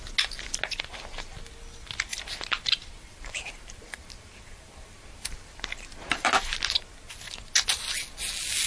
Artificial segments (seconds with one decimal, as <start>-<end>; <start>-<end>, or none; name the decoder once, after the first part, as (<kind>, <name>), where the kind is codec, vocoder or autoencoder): 2.1-6.4 (vocoder, BigVGAN v2)